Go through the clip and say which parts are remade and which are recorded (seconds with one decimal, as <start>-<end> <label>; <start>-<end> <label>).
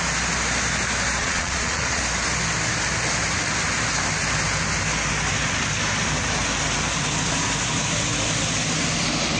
0.0-1.2 recorded; 1.2-2.0 remade; 2.0-9.4 recorded